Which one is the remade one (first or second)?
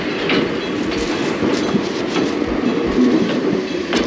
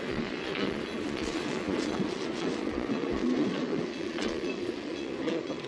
second